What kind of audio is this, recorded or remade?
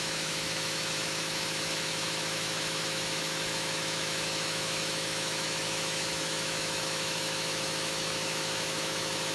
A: remade